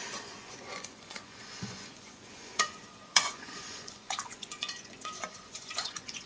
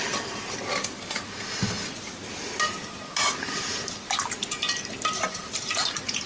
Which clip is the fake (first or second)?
first